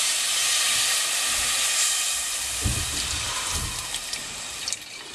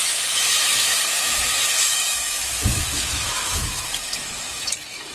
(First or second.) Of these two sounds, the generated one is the second